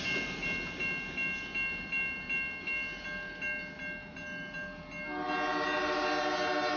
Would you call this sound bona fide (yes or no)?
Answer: yes